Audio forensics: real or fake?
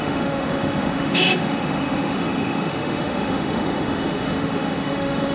fake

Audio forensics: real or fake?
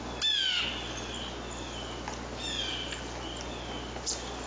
real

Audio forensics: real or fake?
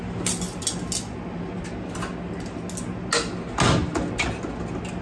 real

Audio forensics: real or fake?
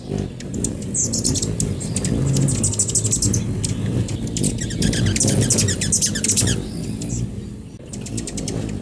real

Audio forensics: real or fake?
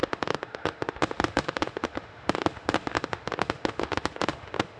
fake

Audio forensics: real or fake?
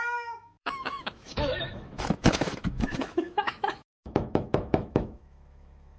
fake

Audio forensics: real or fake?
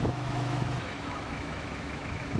fake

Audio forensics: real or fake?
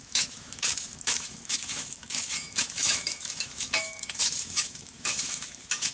fake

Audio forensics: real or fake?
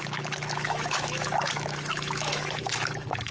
fake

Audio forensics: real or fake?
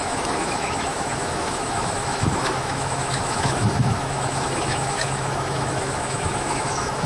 fake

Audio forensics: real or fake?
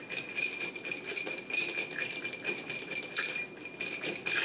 real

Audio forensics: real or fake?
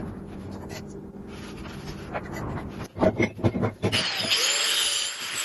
real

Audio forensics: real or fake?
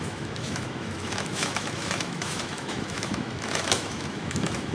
fake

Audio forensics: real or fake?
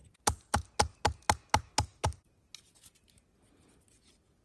real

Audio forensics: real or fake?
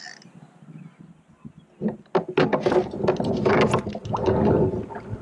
real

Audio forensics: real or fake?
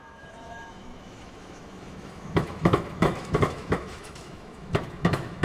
fake